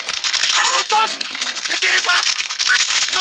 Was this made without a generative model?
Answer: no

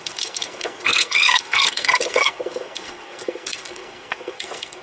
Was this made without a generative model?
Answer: no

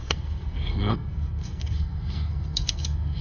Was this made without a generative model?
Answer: no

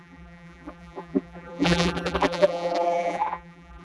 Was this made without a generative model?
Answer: no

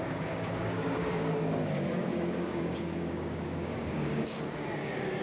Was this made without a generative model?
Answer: no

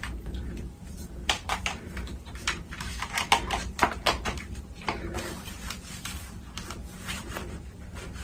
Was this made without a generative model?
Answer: no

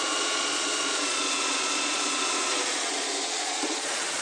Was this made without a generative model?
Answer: no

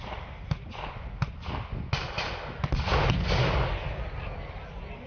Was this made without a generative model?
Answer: yes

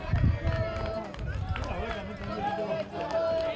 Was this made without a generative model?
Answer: yes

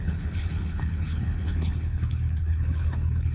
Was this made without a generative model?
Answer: no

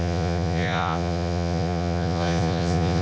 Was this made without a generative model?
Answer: no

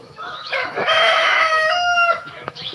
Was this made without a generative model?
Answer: no